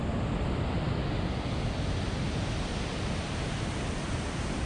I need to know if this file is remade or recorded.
recorded